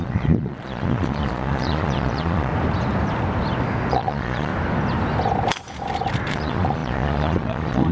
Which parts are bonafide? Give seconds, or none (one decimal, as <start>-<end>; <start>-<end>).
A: 2.5-3.9; 4.5-6.3